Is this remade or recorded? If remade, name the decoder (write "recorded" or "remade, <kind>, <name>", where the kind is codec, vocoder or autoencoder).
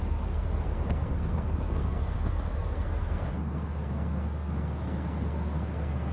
remade, codec, SNAC